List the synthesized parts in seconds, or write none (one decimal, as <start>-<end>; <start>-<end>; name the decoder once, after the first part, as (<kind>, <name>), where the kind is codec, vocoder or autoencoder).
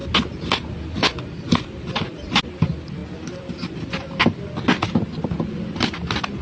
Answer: none